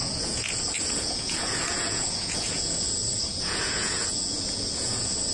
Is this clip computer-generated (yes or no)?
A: yes